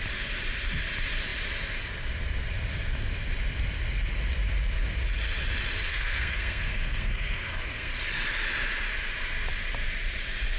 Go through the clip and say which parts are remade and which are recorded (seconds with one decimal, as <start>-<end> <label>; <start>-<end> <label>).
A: 0.0-5.9 recorded; 5.9-7.9 remade; 7.9-10.6 recorded